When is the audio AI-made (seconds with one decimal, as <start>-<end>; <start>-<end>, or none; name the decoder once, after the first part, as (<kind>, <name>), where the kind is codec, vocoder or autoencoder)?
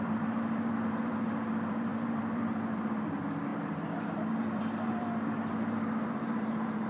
0.0-6.9 (vocoder, BigVGAN v2)